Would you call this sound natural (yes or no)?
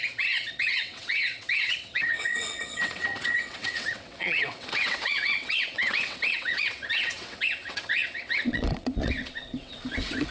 no